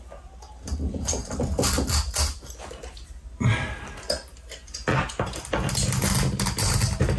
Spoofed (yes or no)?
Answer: no